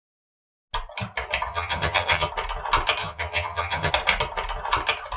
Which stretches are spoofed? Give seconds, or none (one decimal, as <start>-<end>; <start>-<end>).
1.5-2.3; 3.0-3.9